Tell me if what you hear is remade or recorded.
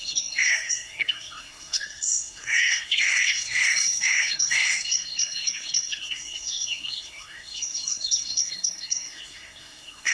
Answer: remade